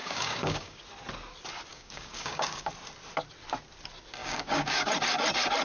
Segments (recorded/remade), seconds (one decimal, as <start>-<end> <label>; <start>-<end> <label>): 0.0-0.8 remade; 0.8-1.7 recorded; 1.7-2.7 remade; 2.7-4.2 recorded; 4.2-4.9 remade; 4.9-5.6 recorded